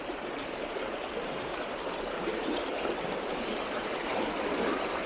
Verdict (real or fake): fake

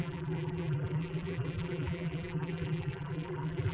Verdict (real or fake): fake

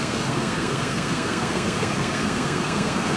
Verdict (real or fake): fake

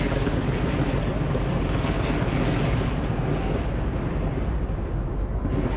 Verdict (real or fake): real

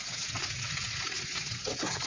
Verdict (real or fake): fake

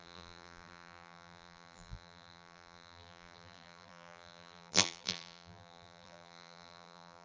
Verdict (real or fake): fake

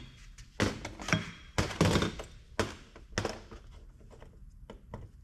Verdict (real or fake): real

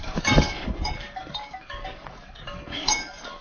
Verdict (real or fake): fake